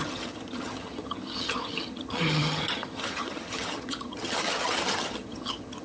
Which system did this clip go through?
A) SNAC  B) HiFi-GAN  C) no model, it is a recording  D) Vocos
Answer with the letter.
B